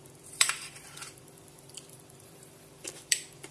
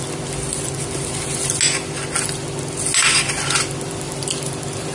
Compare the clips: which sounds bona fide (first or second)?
second